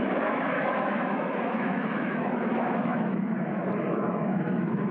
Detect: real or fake fake